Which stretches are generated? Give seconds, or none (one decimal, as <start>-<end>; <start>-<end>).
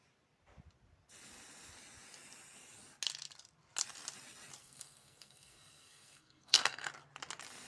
4.6-6.9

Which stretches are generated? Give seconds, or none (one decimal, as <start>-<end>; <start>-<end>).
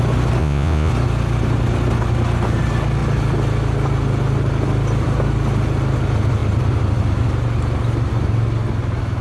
0.4-0.9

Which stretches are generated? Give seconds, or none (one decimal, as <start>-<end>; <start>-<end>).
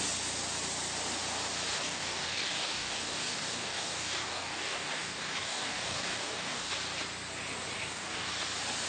1.7-6.7; 7.8-8.3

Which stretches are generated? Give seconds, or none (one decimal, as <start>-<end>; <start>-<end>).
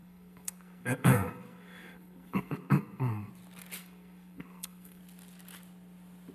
0.0-3.3; 3.8-5.0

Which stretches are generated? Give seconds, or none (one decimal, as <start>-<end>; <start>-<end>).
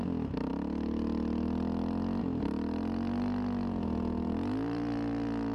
none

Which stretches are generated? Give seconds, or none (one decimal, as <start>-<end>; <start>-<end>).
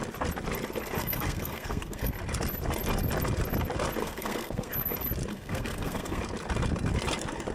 1.0-2.1; 4.0-4.7; 5.3-6.2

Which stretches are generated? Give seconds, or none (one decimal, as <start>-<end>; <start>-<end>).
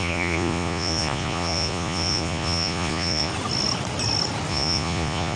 0.0-3.3; 4.5-5.4